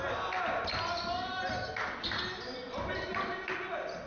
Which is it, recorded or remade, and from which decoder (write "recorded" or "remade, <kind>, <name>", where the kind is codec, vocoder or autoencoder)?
recorded